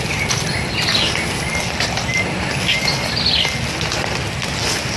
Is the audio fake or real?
real